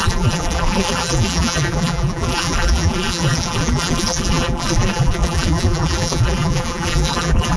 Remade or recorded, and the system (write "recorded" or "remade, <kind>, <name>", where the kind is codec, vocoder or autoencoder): remade, vocoder, BigVGAN v2